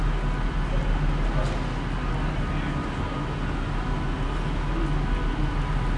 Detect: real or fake real